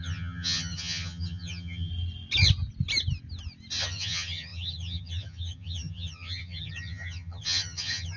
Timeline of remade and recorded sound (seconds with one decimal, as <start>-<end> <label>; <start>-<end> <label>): 0.0-1.9 remade; 1.9-3.8 recorded; 3.8-8.2 remade